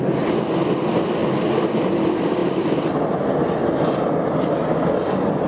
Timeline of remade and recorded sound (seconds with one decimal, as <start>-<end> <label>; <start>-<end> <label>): 0.0-5.5 recorded